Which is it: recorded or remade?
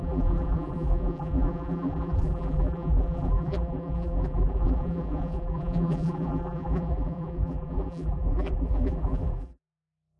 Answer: remade